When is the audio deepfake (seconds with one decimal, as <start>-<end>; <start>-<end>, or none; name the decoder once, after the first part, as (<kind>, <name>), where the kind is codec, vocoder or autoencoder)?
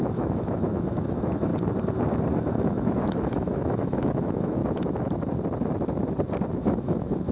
0.0-1.5 (autoencoder, DAC-VAE); 2.3-4.6; 6.5-7.3